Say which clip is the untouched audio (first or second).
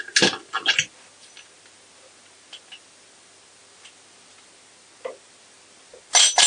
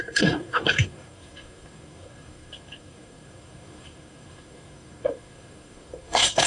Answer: first